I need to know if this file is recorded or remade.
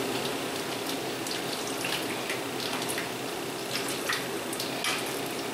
recorded